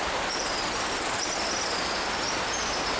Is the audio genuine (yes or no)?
yes